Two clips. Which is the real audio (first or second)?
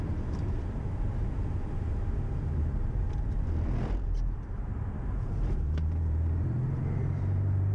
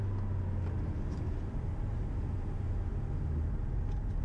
second